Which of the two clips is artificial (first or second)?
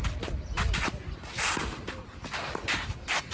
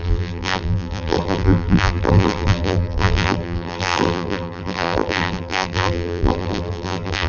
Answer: second